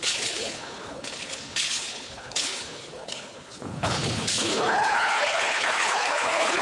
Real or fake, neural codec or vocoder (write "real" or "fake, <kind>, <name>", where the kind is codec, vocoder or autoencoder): fake, codec, HILCodec